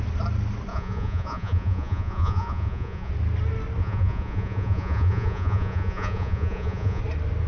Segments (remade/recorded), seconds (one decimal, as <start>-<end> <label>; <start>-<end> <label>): 0.0-0.7 recorded; 0.7-3.1 remade; 3.1-3.8 recorded; 3.8-7.0 remade; 7.0-7.5 recorded

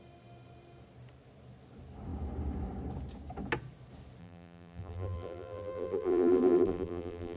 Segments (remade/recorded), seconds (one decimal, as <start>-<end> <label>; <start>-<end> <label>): 0.0-4.2 recorded; 4.2-7.4 remade

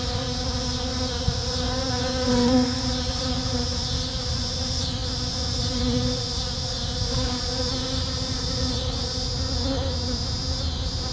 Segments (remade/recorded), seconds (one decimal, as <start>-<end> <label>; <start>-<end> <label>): 0.0-2.3 recorded; 2.3-2.8 remade; 2.8-11.1 recorded

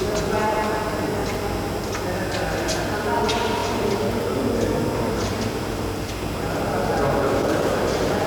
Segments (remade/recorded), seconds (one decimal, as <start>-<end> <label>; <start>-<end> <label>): 0.0-1.2 remade; 1.2-2.9 recorded; 2.9-8.3 remade